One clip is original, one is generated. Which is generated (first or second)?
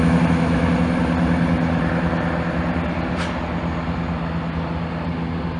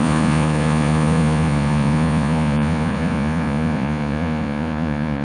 second